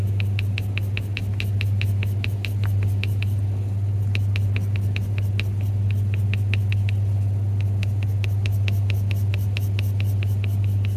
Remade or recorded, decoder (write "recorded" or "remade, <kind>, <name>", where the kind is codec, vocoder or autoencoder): recorded